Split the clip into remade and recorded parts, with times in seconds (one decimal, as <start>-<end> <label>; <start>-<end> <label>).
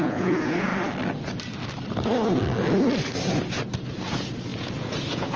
0.0-0.7 remade; 0.7-3.9 recorded; 3.9-5.4 remade